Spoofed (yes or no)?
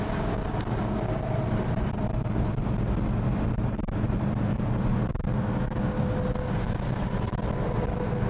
no